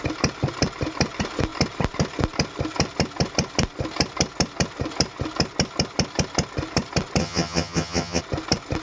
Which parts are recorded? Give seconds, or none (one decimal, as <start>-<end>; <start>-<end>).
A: 0.0-7.2; 8.2-8.8